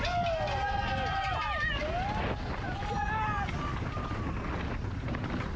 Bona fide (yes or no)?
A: yes